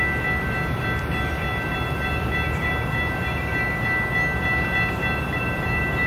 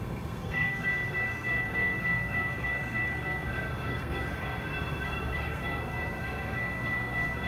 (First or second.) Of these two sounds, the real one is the first